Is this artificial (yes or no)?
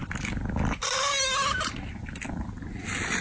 no